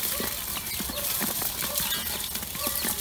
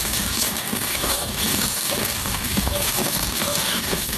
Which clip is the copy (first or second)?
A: second